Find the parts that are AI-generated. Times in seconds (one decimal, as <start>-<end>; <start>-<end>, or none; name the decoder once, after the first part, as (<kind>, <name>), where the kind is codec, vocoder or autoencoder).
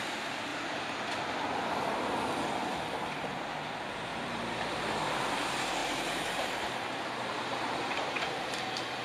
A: 0.5-1.0 (vocoder, BigVGAN v2); 4.1-4.8; 5.8-8.5